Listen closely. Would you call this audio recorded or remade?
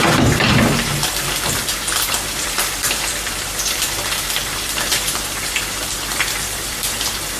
remade